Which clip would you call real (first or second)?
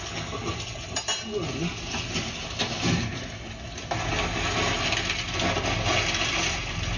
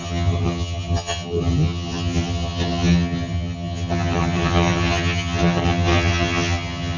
first